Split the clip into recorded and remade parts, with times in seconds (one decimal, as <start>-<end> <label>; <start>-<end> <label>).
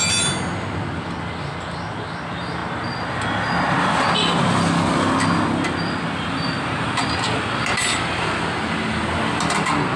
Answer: 0.0-10.0 recorded